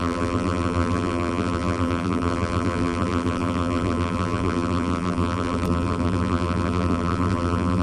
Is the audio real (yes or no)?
no